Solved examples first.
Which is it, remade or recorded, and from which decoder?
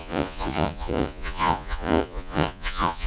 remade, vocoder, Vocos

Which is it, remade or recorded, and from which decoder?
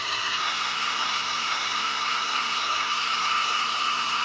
remade, codec, SNAC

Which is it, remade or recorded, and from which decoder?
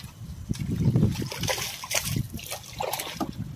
recorded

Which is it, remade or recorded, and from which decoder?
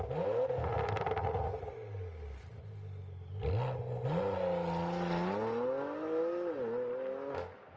recorded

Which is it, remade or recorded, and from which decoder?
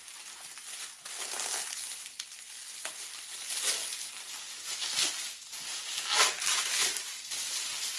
recorded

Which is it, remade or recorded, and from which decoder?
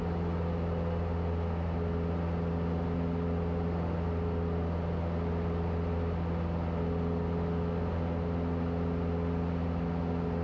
recorded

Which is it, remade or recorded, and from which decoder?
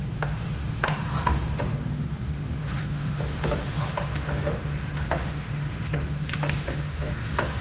remade, autoencoder, DAC-VAE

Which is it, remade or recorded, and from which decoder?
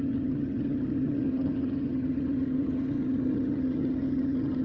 remade, vocoder, HiFi-GAN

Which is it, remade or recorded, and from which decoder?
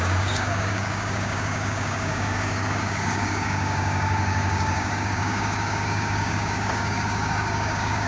remade, codec, DAC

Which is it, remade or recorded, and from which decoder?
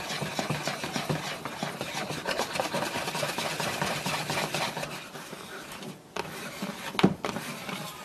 recorded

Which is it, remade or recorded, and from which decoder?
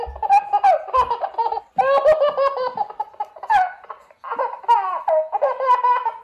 recorded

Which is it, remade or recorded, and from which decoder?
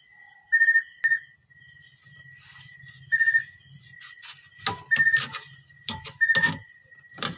recorded